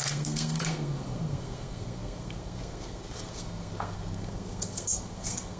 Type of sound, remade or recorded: remade